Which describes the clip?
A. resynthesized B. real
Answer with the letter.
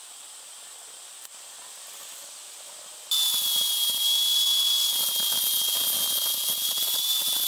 B